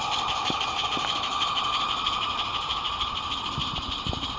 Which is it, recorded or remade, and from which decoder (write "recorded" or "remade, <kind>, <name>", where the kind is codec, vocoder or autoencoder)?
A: recorded